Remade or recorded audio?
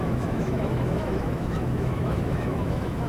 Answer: remade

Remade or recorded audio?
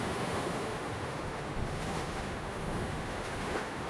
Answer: remade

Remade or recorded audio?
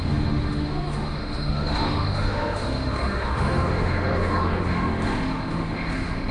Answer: remade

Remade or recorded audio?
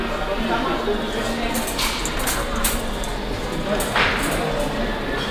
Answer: recorded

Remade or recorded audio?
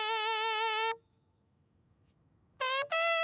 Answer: remade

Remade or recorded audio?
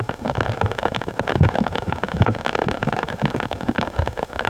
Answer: remade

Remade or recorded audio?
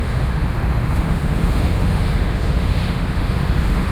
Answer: remade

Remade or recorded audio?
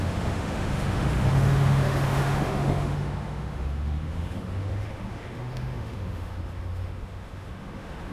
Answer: remade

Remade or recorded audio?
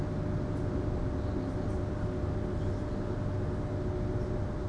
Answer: recorded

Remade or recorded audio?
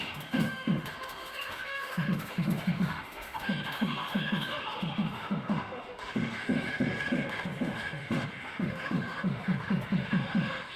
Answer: remade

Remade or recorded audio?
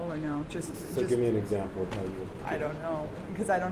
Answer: recorded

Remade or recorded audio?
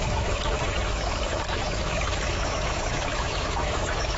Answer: remade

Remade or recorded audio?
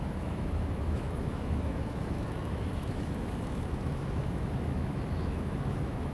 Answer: remade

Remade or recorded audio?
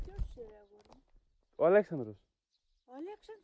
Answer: recorded